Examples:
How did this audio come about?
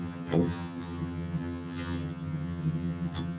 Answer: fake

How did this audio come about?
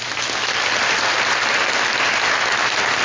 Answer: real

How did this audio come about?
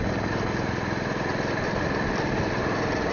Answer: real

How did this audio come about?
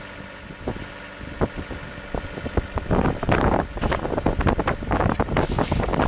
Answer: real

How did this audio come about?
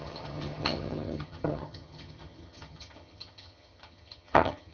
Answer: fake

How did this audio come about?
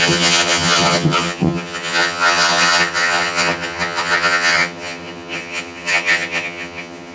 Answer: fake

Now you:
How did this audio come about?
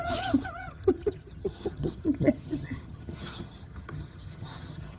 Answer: fake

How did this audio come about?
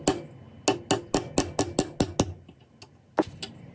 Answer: real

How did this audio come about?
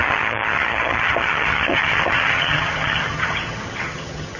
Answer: fake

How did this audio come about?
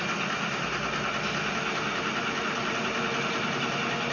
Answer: real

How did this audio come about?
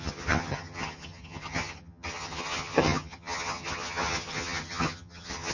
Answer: fake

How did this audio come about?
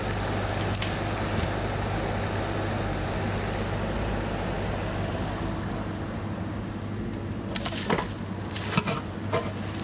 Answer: real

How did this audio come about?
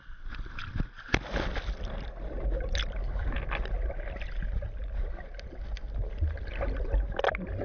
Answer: real